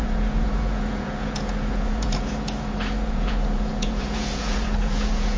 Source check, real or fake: fake